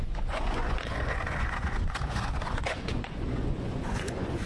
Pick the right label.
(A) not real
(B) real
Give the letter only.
A